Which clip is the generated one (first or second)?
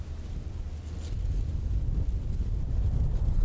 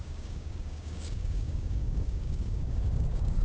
second